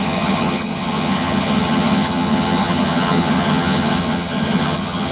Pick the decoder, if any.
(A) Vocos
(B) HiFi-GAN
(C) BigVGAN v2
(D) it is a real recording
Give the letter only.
B